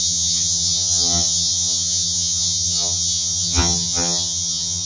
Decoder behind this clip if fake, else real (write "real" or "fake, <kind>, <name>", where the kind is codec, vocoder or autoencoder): fake, vocoder, HiFi-GAN